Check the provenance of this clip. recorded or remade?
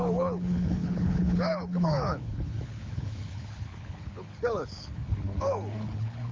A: remade